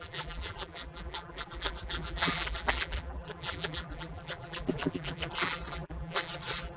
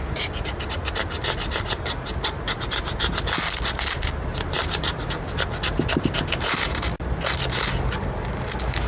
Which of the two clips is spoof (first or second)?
first